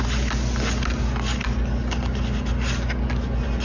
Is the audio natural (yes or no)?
yes